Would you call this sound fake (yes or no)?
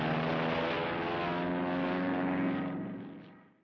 no